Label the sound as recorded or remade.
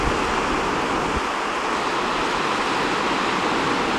recorded